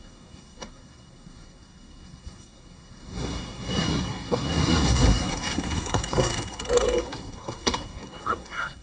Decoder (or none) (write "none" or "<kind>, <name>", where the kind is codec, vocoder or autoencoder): codec, SNAC